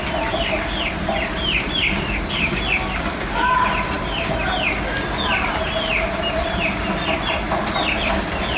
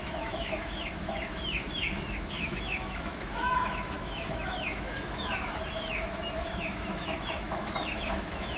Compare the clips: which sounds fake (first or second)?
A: second